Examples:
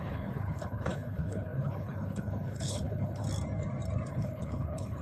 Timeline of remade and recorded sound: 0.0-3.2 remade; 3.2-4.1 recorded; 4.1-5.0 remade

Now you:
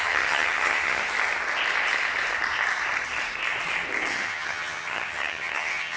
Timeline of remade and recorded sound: 0.0-1.0 remade; 1.0-4.1 recorded; 4.1-6.0 remade